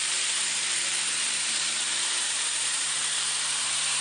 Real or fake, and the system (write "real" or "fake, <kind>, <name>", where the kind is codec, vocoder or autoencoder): fake, vocoder, BigVGAN v2